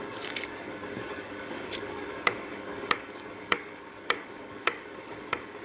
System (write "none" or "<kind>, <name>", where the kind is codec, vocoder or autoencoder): codec, DAC